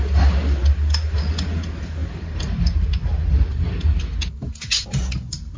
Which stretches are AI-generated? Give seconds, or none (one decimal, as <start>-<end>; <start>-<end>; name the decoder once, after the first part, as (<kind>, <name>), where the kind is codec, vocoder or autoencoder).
none